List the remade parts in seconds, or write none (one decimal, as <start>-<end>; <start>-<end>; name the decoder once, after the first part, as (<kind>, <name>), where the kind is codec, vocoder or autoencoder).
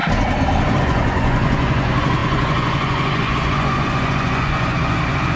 0.8-5.4 (vocoder, Vocos)